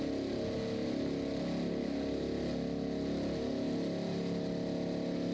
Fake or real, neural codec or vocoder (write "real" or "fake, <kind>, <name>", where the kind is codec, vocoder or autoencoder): real